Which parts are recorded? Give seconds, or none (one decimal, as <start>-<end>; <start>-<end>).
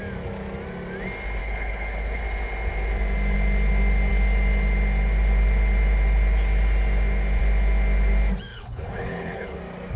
0.0-1.4; 2.2-8.5; 9.6-10.0